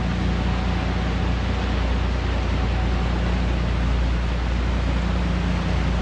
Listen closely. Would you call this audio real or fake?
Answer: real